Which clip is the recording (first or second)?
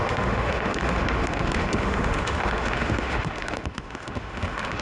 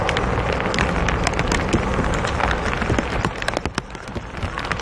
second